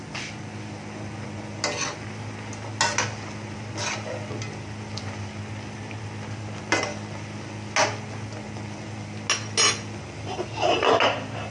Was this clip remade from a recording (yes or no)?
no